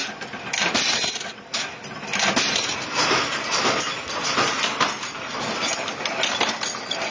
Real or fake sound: real